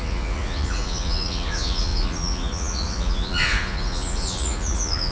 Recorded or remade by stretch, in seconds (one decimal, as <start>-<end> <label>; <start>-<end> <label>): 0.0-5.1 remade